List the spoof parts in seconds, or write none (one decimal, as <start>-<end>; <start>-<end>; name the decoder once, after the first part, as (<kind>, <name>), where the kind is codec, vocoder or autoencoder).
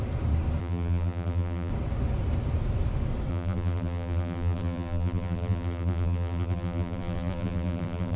0.6-1.7 (vocoder, BigVGAN v2); 3.3-8.2